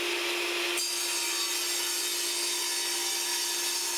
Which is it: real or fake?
real